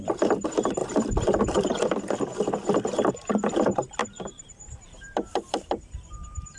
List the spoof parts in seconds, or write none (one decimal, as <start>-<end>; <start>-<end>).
4.0-6.1